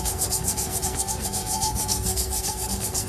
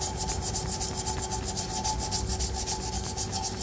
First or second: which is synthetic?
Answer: first